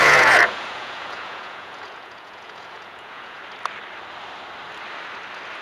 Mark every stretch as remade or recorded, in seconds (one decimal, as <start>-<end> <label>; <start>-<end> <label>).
0.0-3.4 remade; 3.4-5.6 recorded

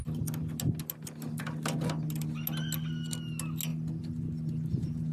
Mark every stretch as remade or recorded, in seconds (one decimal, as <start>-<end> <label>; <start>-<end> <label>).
0.0-5.1 recorded

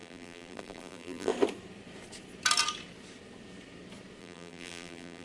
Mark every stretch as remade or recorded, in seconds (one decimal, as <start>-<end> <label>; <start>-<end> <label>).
0.0-1.3 remade; 1.3-4.2 recorded; 4.2-5.2 remade

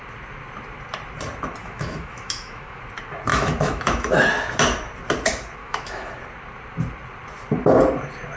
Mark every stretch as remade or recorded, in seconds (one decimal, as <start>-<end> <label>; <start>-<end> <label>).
0.0-1.6 recorded; 1.6-2.8 remade; 2.8-3.3 recorded; 3.3-4.3 remade; 4.3-5.6 recorded; 5.6-6.1 remade; 6.1-8.4 recorded

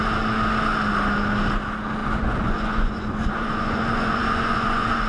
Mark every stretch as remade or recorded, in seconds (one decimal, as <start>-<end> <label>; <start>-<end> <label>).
0.0-2.0 recorded; 2.0-5.1 remade

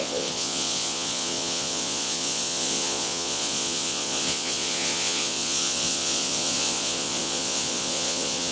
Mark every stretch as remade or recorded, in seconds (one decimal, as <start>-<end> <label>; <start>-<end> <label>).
0.0-8.5 remade